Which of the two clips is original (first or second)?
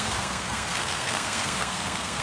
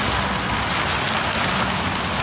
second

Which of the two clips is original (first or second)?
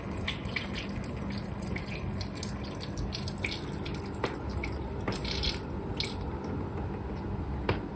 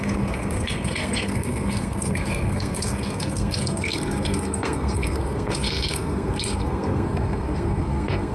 first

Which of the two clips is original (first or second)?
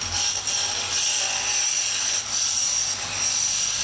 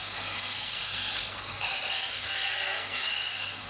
first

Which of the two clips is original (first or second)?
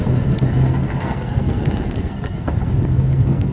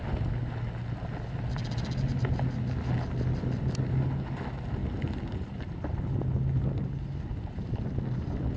second